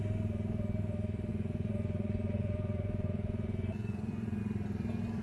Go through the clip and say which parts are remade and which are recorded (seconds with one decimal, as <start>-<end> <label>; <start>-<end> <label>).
0.0-1.3 recorded; 1.3-4.4 remade; 4.4-5.2 recorded